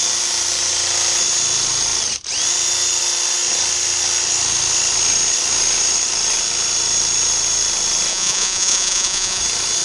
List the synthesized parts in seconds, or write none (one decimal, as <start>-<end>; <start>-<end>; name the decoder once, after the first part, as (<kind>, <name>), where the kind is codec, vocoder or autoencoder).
8.1-9.4 (vocoder, Vocos)